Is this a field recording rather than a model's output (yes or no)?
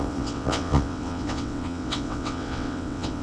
no